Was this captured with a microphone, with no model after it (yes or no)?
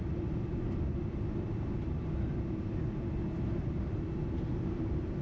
no